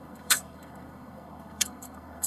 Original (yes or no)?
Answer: no